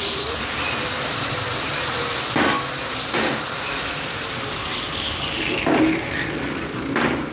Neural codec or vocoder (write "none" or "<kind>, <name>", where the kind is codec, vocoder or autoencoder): vocoder, BigVGAN v2